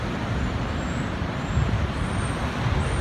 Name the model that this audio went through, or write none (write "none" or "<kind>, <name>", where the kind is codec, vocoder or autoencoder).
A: none